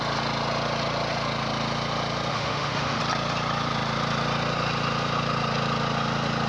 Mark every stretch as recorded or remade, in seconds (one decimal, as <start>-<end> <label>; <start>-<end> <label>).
0.0-2.3 recorded; 2.3-3.0 remade; 3.0-6.5 recorded